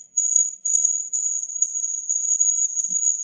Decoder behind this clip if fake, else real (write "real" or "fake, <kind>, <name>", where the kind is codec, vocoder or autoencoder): fake, codec, SNAC